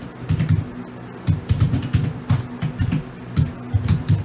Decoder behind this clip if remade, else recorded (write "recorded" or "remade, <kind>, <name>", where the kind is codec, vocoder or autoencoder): recorded